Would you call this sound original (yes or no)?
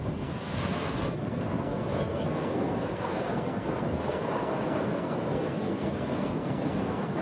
no